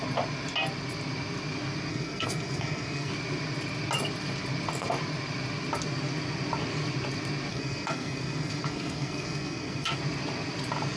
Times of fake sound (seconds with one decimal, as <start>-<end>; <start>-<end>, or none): 1.9-3.1; 7.5-10.0